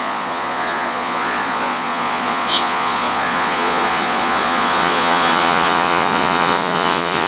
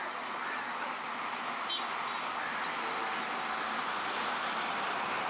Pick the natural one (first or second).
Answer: second